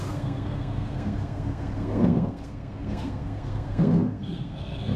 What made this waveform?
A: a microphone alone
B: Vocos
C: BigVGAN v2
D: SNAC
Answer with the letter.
D